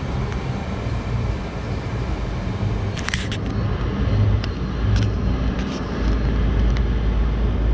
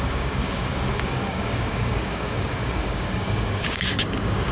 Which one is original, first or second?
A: first